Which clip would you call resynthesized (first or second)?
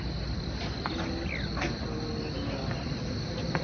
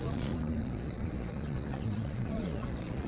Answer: second